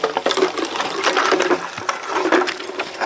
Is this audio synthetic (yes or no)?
no